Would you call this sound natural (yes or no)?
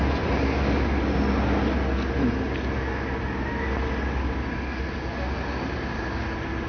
yes